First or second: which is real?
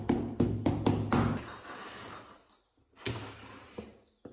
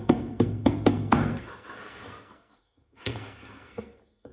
first